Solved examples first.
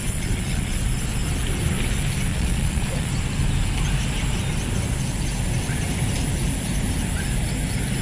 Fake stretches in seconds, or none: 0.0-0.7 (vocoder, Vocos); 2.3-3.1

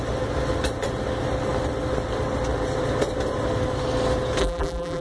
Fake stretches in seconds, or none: 4.4-5.0 (vocoder, BigVGAN v2)